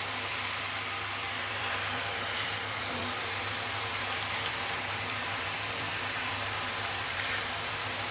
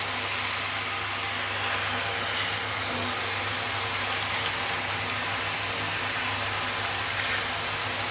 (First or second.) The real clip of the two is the second